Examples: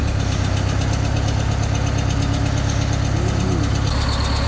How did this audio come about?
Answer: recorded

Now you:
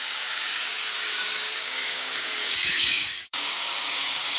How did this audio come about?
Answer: remade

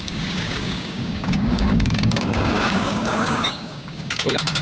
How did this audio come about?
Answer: remade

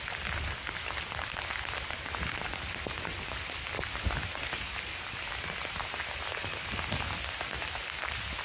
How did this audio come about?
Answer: recorded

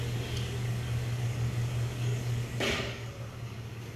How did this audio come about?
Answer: remade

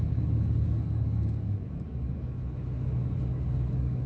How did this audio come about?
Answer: remade